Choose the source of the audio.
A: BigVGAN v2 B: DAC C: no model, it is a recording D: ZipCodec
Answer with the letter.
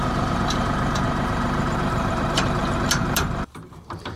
A